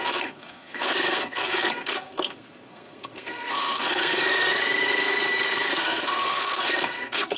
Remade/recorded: remade